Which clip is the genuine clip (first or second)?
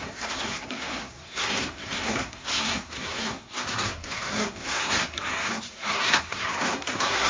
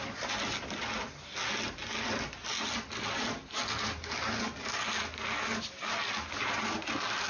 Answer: second